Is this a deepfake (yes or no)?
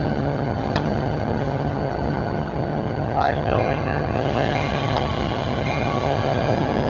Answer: yes